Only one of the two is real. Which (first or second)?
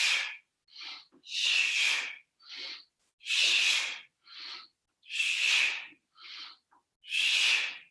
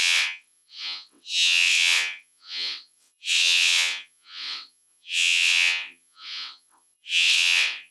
first